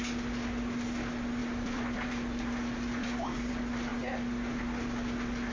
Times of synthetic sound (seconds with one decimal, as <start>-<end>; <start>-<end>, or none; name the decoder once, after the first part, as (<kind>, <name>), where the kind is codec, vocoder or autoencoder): 1.4-2.1 (vocoder, BigVGAN v2); 3.0-3.5